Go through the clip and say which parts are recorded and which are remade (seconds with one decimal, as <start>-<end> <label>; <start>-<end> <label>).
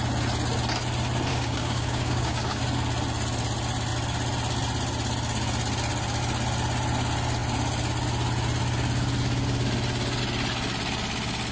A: 0.0-1.3 recorded; 1.3-2.6 remade; 2.6-11.5 recorded